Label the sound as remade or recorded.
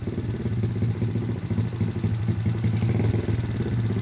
recorded